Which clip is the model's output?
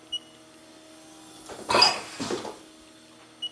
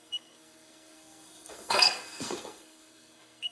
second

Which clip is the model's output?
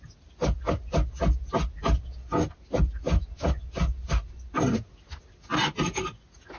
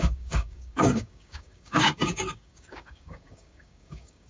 second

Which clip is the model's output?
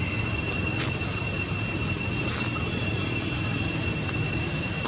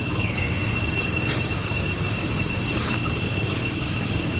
second